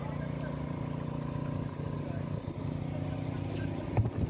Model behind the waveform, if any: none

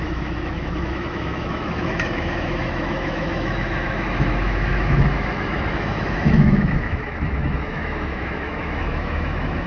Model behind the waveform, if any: autoencoder, DAC-VAE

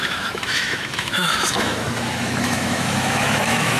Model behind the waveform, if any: autoencoder, DAC-VAE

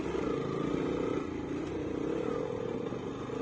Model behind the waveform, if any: none